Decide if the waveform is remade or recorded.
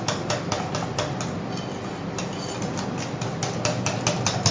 recorded